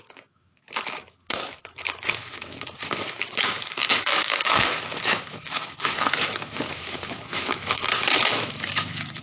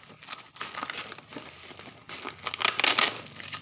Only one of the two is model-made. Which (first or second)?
first